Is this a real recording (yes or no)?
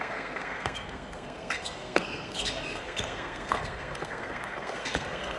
no